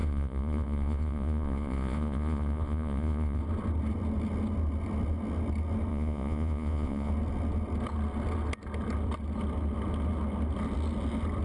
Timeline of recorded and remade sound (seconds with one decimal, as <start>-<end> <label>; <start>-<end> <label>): 0.0-3.4 remade; 3.4-5.9 recorded; 5.9-7.1 remade; 7.1-11.4 recorded